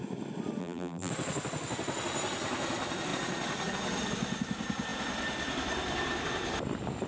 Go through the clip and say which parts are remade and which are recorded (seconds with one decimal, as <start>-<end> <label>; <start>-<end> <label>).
0.0-0.6 recorded; 0.6-1.1 remade; 1.1-7.1 recorded